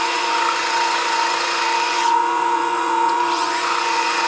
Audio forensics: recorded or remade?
remade